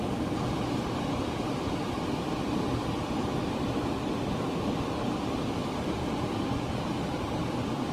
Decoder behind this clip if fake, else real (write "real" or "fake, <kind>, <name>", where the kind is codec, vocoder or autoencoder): real